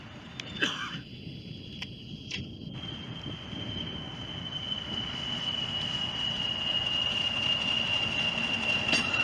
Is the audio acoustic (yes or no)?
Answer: yes